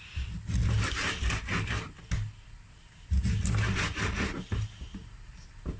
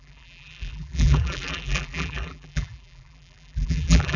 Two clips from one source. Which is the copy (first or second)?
second